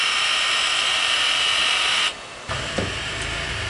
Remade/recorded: remade